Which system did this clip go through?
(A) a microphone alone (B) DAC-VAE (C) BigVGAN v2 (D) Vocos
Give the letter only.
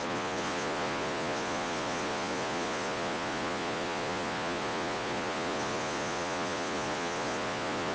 D